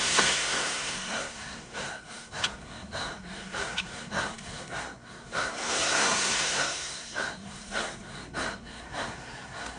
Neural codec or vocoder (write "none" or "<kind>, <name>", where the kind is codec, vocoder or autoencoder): codec, SNAC